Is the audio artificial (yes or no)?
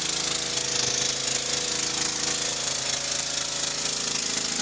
no